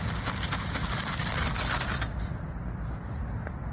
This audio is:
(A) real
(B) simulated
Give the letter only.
A